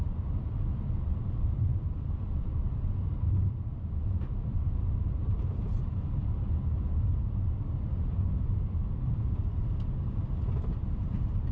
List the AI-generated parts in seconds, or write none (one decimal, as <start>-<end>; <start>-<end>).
1.7-2.8